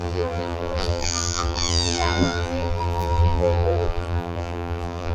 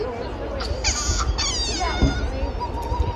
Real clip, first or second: second